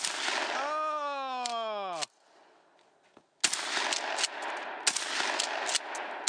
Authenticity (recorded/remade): recorded